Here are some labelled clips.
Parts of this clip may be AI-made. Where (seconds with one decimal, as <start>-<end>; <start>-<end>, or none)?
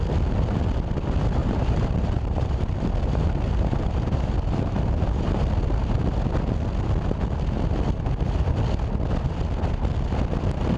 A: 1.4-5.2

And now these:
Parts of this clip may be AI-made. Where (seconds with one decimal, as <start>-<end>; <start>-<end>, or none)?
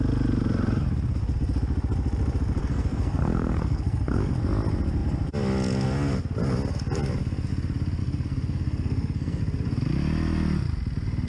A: 2.6-4.4; 8.0-9.4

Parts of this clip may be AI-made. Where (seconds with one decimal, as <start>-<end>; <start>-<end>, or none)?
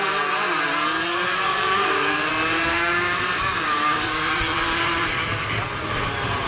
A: 1.3-2.3; 2.7-4.4